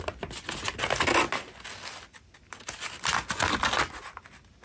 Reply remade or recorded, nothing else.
recorded